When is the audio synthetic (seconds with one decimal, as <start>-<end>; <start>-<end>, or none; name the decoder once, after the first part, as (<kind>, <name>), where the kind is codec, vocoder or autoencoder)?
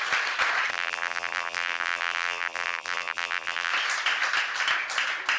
0.7-3.7 (vocoder, BigVGAN v2)